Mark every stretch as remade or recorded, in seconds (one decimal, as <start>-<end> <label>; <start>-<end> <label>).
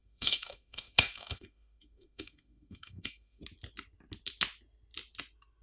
0.0-3.4 remade; 3.4-5.6 recorded